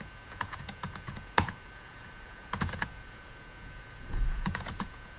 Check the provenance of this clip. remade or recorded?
remade